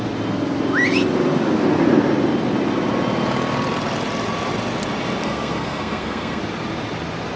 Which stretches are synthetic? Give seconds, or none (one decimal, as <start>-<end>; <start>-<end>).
5.2-6.4